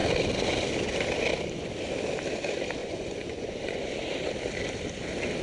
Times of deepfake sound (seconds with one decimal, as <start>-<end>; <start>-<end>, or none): 2.8-3.9